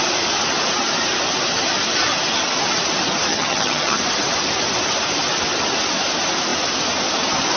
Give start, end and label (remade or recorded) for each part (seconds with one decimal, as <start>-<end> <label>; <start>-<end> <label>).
0.0-3.3 recorded; 3.3-4.0 remade; 4.0-7.6 recorded